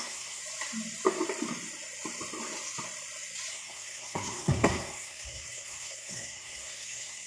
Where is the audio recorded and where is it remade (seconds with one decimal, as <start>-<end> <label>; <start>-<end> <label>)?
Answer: 0.0-0.4 remade; 0.4-3.5 recorded; 3.5-7.3 remade

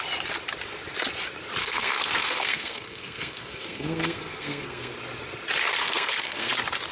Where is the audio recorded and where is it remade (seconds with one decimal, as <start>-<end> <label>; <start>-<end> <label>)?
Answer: 0.0-1.6 recorded; 1.6-4.9 remade; 4.9-5.8 recorded; 5.8-6.5 remade; 6.5-6.9 recorded

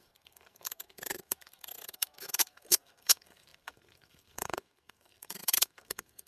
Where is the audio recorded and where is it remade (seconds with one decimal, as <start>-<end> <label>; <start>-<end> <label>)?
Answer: 0.0-6.3 remade

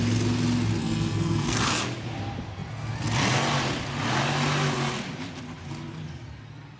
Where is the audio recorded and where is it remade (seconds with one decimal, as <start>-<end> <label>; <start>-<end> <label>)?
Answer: 0.0-0.8 recorded; 0.8-1.8 remade; 1.8-6.8 recorded

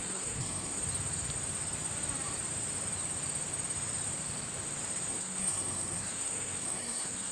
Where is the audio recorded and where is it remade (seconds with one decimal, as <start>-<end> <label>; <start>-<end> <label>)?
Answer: 0.0-0.8 remade; 0.8-5.1 recorded; 5.1-7.3 remade